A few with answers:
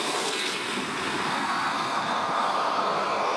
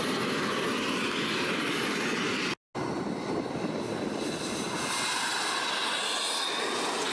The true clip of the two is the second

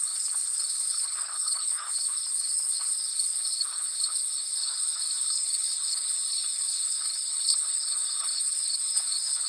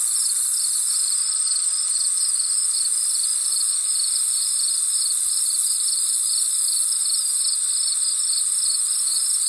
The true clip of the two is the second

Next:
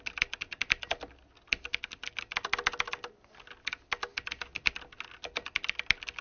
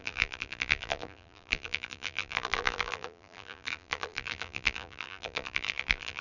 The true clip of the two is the first